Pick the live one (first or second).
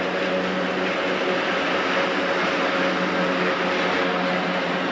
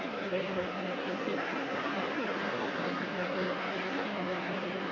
first